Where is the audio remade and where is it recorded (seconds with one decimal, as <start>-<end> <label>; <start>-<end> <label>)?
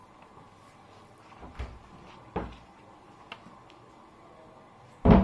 0.0-5.2 recorded